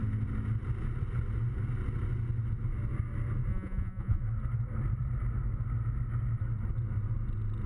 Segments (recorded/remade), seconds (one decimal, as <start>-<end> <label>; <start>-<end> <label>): 0.0-3.5 recorded; 3.5-4.2 remade; 4.2-7.7 recorded